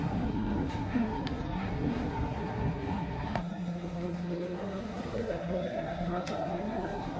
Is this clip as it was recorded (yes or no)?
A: no